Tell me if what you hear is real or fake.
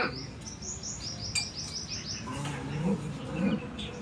real